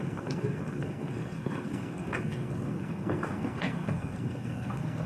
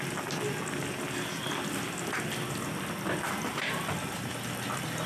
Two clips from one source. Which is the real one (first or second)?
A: second